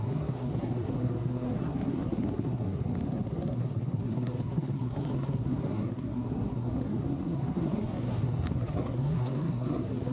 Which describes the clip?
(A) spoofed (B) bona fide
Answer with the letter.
A